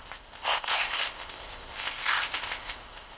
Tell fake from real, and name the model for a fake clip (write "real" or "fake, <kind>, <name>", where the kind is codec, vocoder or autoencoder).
fake, codec, ZipCodec